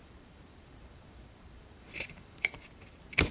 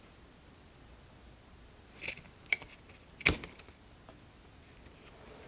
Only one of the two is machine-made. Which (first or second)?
first